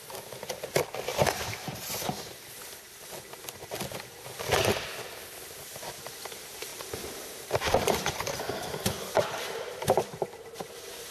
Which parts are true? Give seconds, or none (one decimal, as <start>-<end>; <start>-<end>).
0.0-1.1; 2.3-6.7; 9.8-11.1